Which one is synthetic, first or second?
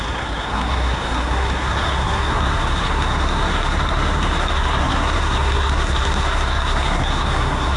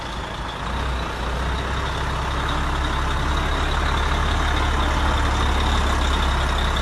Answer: first